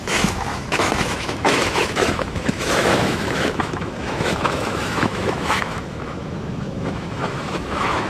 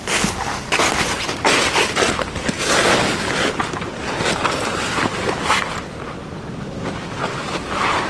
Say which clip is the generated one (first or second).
first